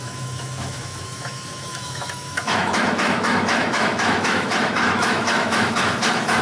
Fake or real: fake